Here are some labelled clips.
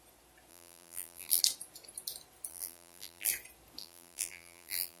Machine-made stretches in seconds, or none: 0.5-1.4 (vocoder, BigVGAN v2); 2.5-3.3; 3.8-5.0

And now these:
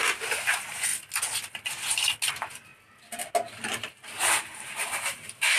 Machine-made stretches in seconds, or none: 0.0-0.9 (vocoder, BigVGAN v2); 2.3-2.7; 3.9-5.6

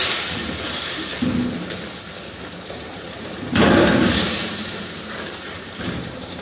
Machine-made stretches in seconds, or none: 0.0-1.1 (vocoder, BigVGAN v2); 2.5-6.4

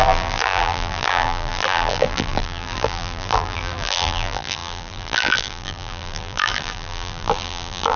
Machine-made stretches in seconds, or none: 0.0-8.0 (vocoder, BigVGAN v2)